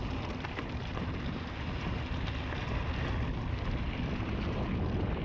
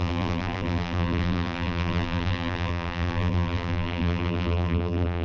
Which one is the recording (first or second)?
first